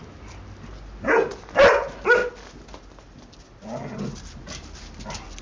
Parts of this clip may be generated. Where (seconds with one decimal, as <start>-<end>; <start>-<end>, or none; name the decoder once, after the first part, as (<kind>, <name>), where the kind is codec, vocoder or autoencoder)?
none